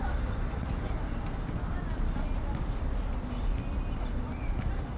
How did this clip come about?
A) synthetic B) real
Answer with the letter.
B